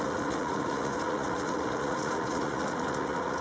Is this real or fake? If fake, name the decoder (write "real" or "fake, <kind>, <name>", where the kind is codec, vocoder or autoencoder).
fake, vocoder, Vocos